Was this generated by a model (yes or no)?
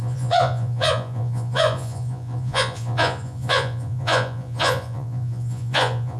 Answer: yes